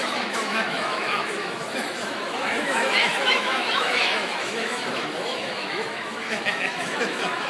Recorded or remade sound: remade